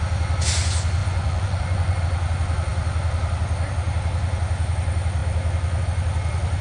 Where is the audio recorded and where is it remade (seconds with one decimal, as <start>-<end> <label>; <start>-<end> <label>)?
0.0-1.0 recorded; 1.0-2.0 remade; 2.0-6.6 recorded

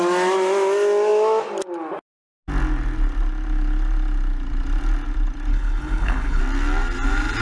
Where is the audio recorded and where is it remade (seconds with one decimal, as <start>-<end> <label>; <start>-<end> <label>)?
0.0-5.5 recorded; 5.5-6.4 remade; 6.4-7.4 recorded

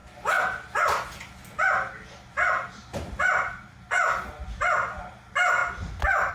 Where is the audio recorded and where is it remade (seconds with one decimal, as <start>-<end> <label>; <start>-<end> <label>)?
0.0-6.3 recorded

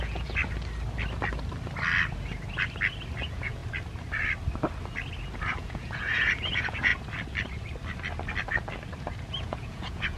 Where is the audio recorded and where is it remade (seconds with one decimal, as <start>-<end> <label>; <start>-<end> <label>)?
0.0-0.4 remade; 0.4-3.2 recorded; 3.2-3.6 remade; 3.6-5.4 recorded; 5.4-6.9 remade; 6.9-9.4 recorded; 9.4-10.2 remade

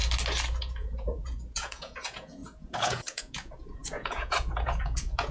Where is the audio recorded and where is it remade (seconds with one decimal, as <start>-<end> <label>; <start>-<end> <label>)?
0.0-0.6 recorded; 0.6-5.3 remade

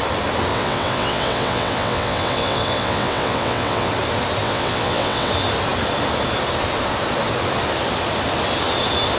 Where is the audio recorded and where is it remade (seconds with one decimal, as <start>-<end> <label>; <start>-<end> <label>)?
0.0-0.5 recorded; 0.5-3.9 remade; 3.9-4.4 recorded; 4.4-5.3 remade; 5.3-9.2 recorded

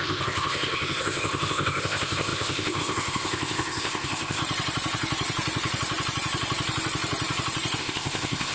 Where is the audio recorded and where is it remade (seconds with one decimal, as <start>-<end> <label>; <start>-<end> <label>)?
0.0-4.4 remade; 4.4-7.8 recorded; 7.8-8.5 remade